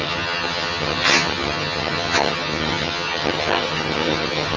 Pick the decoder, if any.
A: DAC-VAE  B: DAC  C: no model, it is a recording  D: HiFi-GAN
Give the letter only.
D